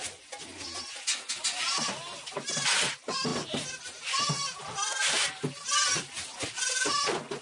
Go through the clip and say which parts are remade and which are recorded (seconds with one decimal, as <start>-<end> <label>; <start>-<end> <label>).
0.0-7.4 recorded